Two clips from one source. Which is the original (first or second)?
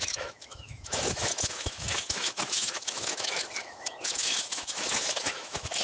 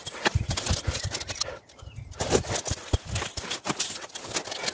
second